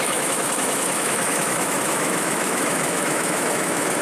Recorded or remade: remade